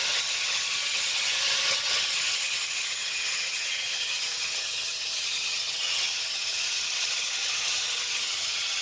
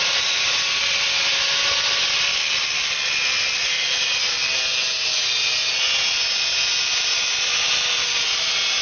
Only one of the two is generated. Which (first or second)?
first